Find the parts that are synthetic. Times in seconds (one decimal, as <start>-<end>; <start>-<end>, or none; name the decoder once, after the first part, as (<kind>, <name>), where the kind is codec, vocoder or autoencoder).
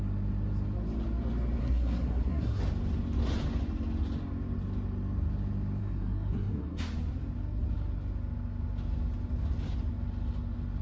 1.6-2.6 (codec, SNAC); 5.8-6.8